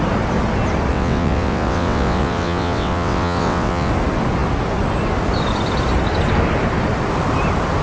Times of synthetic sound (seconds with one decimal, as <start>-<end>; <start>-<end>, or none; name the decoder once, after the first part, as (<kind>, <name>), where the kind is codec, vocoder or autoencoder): 0.9-3.9 (vocoder, WaveNeXt)